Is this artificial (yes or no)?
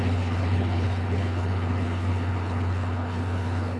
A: yes